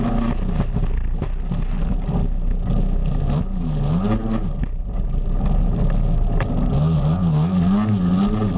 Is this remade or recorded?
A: recorded